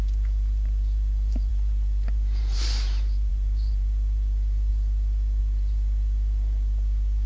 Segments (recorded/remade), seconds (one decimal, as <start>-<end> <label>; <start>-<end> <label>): 0.0-7.3 remade